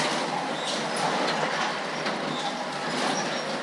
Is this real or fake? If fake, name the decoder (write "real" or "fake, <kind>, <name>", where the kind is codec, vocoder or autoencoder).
real